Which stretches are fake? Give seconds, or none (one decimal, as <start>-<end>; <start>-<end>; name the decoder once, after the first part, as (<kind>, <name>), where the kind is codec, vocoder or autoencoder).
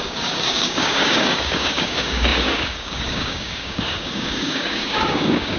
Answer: 0.0-5.6 (codec, DAC)